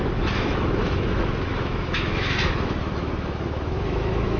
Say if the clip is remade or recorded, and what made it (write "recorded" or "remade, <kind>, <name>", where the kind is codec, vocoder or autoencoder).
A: remade, autoencoder, DAC-VAE